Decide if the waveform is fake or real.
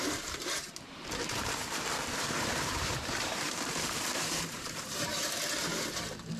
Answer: fake